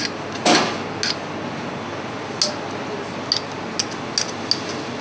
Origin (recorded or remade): recorded